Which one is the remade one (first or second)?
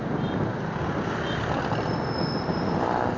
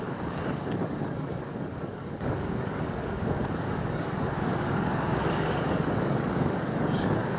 second